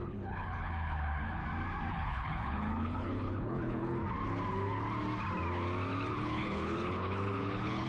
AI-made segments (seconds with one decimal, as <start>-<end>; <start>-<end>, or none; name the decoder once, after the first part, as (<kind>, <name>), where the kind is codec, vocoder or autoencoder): 0.0-1.4 (codec, HILCodec); 1.9-4.0; 6.1-7.9